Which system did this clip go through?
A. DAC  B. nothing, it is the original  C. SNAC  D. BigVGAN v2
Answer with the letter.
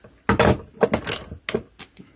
B